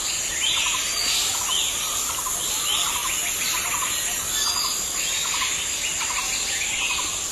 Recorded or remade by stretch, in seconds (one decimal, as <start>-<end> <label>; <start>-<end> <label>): 0.0-7.3 recorded